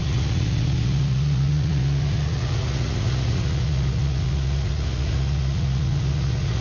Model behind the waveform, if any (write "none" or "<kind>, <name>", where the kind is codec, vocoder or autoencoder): vocoder, Vocos